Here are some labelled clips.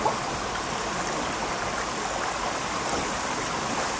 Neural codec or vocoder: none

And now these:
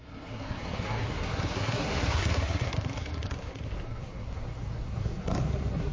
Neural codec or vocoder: codec, SNAC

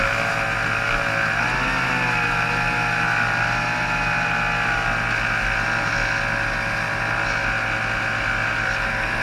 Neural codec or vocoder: none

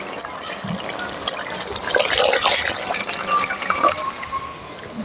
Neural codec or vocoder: none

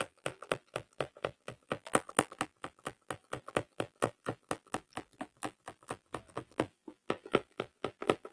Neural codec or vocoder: vocoder, BigVGAN v2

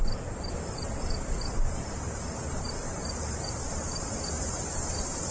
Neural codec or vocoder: vocoder, BigVGAN v2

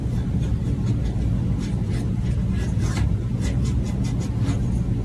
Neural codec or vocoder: none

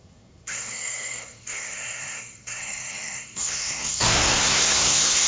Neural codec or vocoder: codec, SNAC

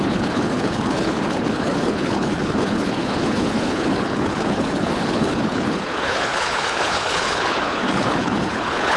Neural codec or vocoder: codec, HILCodec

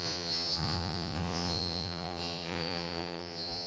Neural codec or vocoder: vocoder, Vocos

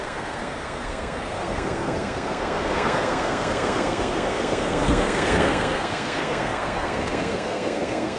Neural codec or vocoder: codec, SNAC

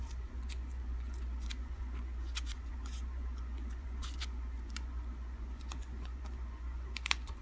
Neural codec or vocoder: vocoder, Vocos